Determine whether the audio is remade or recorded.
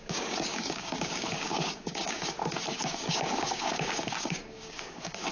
remade